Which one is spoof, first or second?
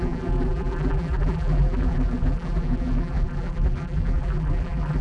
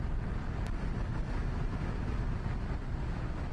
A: first